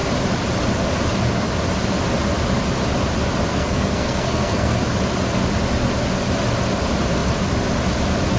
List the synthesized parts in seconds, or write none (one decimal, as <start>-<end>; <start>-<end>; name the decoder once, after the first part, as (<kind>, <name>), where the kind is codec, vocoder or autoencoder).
3.5-4.8 (codec, SNAC)